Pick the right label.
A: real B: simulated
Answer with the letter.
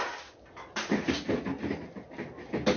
A